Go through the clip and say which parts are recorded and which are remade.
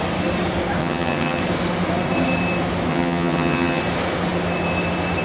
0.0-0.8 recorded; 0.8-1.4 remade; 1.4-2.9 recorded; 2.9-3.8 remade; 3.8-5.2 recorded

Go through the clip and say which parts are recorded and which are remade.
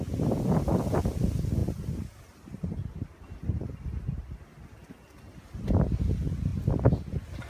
0.0-7.5 recorded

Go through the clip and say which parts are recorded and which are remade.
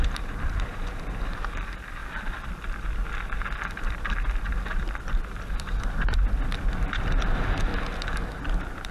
0.0-7.7 remade; 7.7-8.9 recorded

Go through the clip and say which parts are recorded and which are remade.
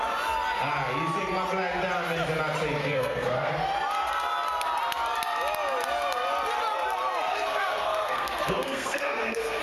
0.0-2.8 recorded; 2.8-3.5 remade; 3.5-7.3 recorded; 7.3-9.6 remade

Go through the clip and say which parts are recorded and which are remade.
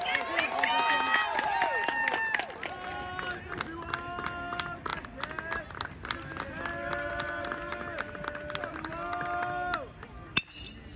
0.0-11.0 recorded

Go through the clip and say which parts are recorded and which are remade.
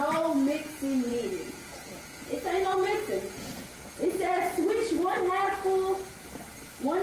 0.0-1.1 recorded; 1.1-5.3 remade; 5.3-7.0 recorded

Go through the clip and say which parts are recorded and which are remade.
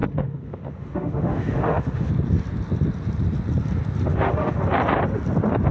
0.0-2.1 remade; 2.1-4.1 recorded; 4.1-4.6 remade; 4.6-5.7 recorded